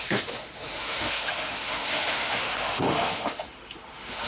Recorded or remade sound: remade